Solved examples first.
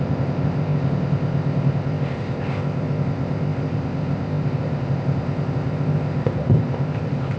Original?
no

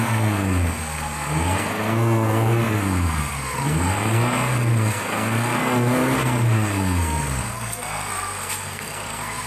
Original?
no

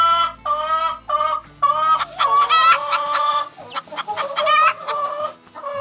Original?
yes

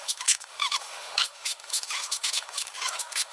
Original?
no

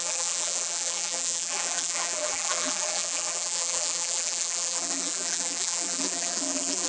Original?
no